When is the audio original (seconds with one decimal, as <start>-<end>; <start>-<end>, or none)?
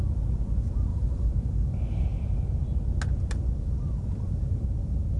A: 0.0-0.9; 1.7-5.2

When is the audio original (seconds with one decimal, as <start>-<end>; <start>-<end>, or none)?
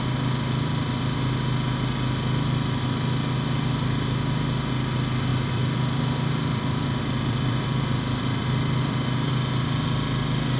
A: 0.0-5.3; 9.3-10.6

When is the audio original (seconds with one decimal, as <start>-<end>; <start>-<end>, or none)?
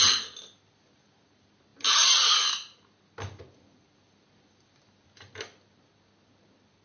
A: 0.0-6.8